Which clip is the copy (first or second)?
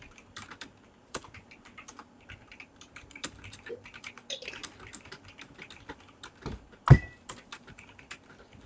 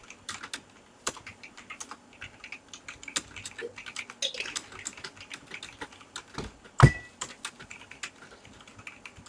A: first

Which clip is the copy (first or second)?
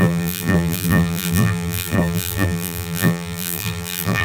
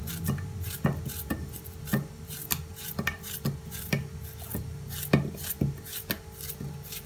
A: first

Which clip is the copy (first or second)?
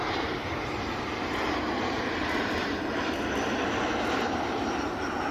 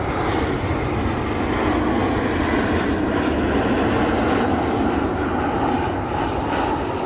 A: first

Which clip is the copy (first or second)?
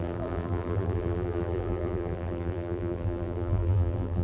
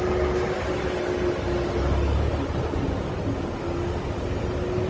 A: first